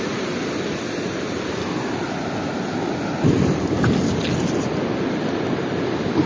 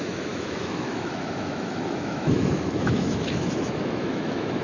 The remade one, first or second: second